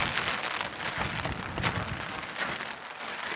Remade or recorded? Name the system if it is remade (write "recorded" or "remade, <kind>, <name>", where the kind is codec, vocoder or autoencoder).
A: recorded